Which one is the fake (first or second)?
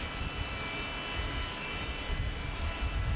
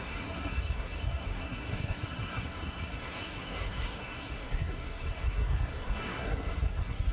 second